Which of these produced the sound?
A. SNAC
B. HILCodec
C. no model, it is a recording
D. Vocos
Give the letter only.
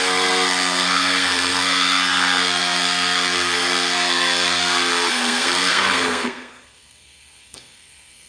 A